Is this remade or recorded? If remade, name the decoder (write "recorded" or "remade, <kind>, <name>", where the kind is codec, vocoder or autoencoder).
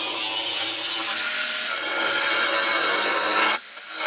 recorded